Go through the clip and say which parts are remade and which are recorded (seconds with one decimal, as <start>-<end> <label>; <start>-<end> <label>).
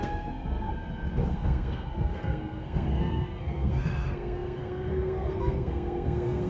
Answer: 0.0-0.7 remade; 0.7-1.3 recorded; 1.3-6.5 remade